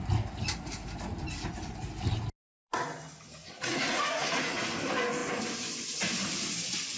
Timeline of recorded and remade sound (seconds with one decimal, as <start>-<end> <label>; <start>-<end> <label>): 0.0-3.4 recorded; 3.4-4.6 remade; 4.6-7.0 recorded